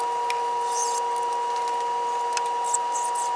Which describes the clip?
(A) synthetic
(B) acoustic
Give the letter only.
B